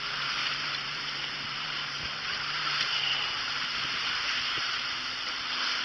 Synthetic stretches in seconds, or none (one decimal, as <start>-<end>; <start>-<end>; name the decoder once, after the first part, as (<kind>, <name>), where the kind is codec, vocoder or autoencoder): 0.0-5.8 (vocoder, BigVGAN v2)